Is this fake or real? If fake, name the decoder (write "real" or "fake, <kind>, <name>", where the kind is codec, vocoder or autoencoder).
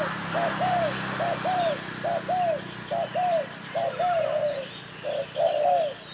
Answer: real